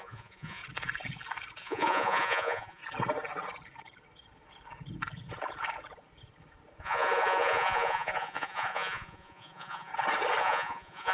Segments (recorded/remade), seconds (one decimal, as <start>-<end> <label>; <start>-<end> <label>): 0.0-0.6 remade; 0.6-1.6 recorded; 1.6-2.8 remade; 2.8-6.8 recorded; 6.8-9.9 remade; 9.9-10.4 recorded; 10.4-11.1 remade